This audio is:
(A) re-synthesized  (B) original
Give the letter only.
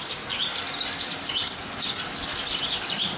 B